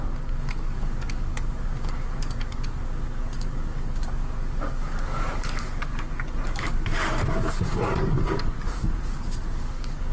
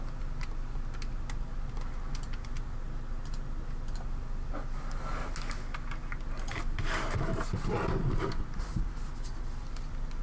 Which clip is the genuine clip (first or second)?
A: second